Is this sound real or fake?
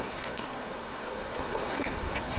fake